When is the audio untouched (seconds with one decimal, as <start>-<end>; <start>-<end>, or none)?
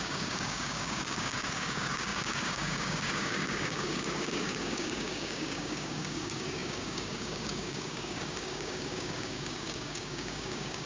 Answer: none